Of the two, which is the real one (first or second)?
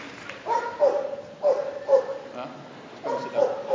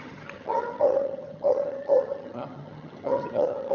first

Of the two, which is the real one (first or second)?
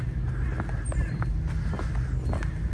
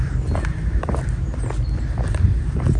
first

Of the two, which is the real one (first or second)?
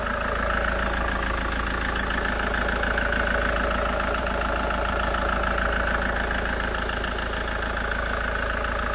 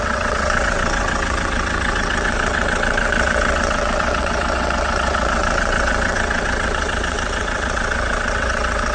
first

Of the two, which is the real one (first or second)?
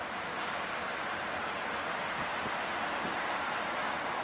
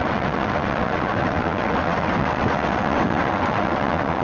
first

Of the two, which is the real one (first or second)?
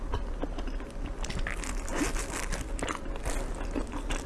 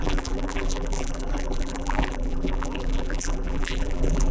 first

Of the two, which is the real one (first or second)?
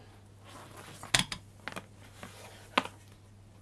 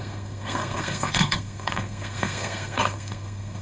first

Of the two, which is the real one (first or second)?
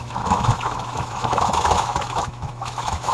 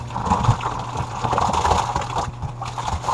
second